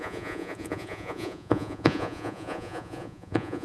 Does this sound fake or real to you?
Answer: fake